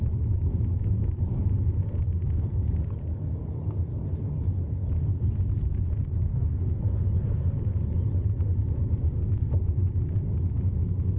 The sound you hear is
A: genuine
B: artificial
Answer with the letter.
A